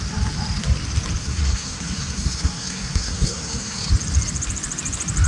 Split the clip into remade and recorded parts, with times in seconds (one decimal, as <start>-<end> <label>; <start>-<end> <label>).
0.0-1.2 recorded; 1.2-3.9 remade; 3.9-5.3 recorded